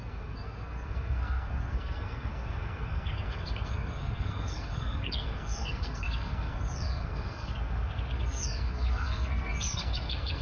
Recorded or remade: remade